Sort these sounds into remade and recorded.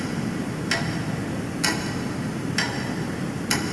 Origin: recorded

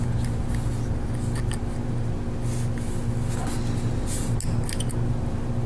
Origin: recorded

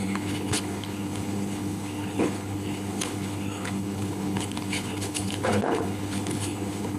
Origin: remade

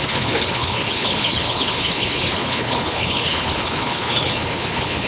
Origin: remade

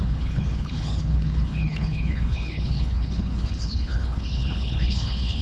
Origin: remade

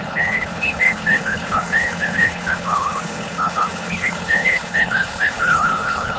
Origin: remade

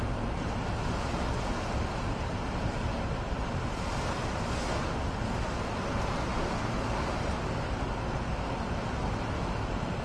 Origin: recorded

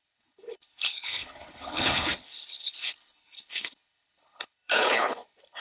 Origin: remade